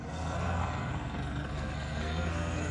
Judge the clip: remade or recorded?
remade